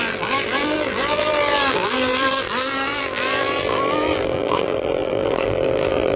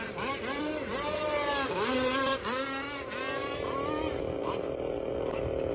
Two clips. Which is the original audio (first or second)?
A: second